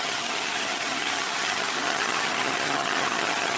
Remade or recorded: remade